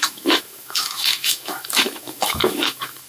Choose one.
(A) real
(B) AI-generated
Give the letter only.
B